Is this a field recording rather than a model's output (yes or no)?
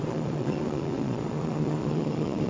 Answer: no